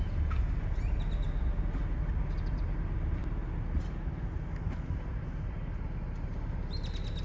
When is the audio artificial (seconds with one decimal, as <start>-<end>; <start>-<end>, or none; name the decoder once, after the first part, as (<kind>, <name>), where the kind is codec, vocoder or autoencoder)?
none